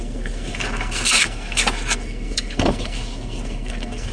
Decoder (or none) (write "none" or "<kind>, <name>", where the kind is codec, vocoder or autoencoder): codec, SNAC